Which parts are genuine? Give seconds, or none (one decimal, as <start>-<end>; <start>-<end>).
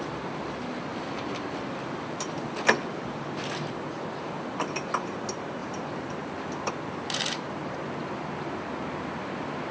0.0-0.9; 3.7-5.6; 6.7-9.7